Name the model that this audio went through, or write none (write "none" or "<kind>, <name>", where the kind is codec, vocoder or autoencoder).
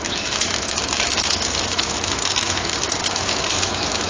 autoencoder, DAC-VAE